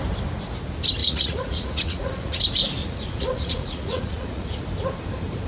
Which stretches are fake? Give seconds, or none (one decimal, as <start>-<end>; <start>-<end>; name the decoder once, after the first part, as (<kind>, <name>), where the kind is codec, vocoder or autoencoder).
1.0-2.4 (vocoder, Vocos); 2.8-4.6

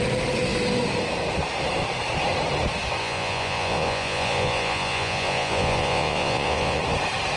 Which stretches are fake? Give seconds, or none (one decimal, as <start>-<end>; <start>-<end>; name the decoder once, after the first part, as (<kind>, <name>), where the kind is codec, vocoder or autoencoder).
3.0-6.8 (vocoder, Vocos)

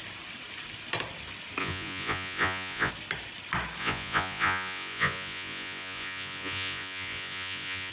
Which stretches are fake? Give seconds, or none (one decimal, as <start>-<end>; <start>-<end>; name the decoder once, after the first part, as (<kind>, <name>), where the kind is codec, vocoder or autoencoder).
1.6-2.9 (vocoder, Vocos); 3.8-7.9

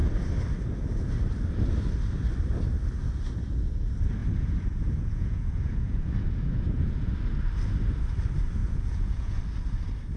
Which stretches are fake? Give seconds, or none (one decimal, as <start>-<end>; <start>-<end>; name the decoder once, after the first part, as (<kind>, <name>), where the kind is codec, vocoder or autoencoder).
4.2-7.1 (vocoder, Vocos); 8.6-9.4

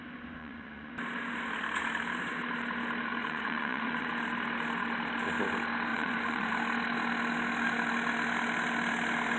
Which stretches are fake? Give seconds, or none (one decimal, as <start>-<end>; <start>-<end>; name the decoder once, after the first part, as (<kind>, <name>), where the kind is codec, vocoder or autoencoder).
0.4-0.9 (vocoder, Vocos); 3.1-4.1; 5.9-6.5

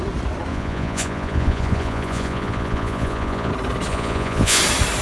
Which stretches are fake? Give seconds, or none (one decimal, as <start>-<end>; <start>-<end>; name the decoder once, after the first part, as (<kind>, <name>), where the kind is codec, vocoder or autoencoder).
0.5-3.5 (vocoder, Vocos); 3.9-4.6

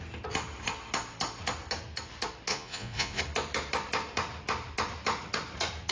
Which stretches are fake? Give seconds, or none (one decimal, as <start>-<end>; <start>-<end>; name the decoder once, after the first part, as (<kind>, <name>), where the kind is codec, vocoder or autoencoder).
2.5-3.2 (vocoder, Vocos)

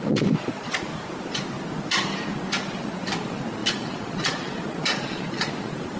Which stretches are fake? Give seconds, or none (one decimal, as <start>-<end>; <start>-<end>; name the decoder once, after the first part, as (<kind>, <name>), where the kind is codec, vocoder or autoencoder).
0.0-0.9 (vocoder, Vocos); 2.8-6.0